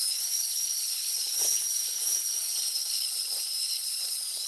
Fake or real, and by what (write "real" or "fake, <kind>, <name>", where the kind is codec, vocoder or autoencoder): fake, codec, HILCodec